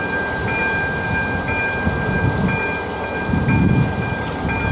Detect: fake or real real